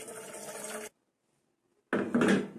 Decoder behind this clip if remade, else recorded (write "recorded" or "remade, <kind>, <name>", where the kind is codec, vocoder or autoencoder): recorded